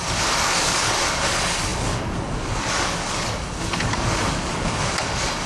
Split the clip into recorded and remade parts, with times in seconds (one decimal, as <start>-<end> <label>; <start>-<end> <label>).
0.0-5.5 remade